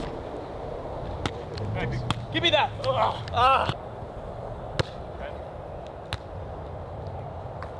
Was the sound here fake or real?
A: real